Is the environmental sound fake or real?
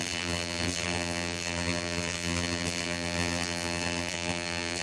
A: fake